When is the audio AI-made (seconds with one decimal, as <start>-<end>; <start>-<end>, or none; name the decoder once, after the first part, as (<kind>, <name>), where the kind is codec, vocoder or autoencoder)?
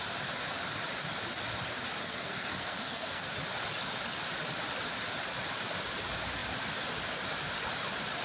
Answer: 2.0-3.3 (codec, SNAC)